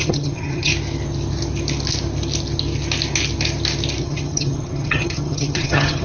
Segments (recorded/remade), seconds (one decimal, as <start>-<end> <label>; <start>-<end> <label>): 0.0-0.7 remade; 0.7-4.0 recorded; 4.0-6.0 remade